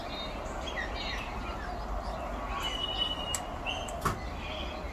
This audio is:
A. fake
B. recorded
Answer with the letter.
B